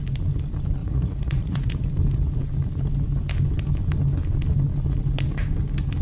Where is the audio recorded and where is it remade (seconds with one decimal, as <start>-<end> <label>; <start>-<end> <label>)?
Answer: 0.0-0.8 recorded; 0.8-1.7 remade; 1.7-6.0 recorded